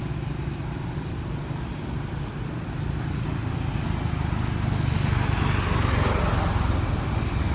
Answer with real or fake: real